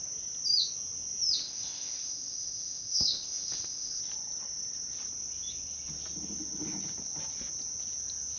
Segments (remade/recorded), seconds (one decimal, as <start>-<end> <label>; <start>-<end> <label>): 0.0-1.4 recorded; 1.4-4.0 remade; 4.0-8.4 recorded